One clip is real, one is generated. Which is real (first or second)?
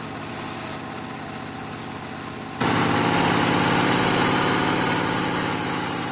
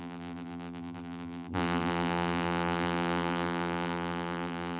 first